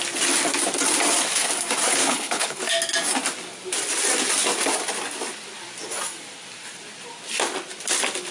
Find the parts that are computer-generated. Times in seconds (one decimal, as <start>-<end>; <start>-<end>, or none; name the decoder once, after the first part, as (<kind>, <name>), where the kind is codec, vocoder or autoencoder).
2.0-2.6 (codec, HILCodec)